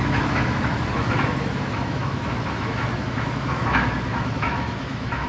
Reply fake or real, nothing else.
fake